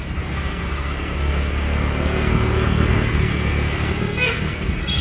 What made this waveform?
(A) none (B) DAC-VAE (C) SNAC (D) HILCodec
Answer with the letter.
C